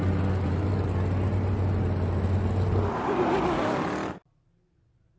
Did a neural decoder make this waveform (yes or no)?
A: no